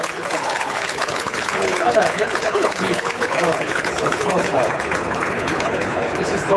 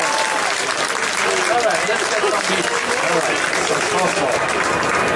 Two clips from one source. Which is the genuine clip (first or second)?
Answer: second